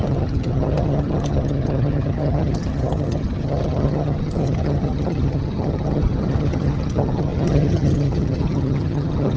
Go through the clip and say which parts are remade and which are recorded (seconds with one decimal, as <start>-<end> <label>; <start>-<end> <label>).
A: 0.0-9.4 remade